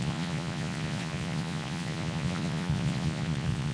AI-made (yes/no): yes